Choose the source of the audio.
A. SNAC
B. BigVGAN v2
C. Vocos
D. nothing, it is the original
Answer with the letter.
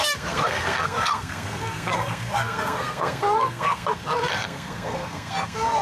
A